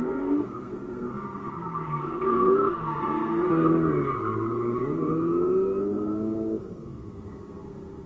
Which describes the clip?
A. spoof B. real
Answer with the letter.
A